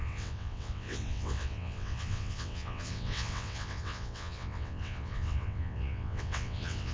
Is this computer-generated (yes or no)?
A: yes